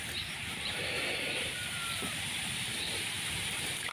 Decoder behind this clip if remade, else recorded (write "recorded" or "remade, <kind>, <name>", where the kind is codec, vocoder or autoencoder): remade, vocoder, BigVGAN v2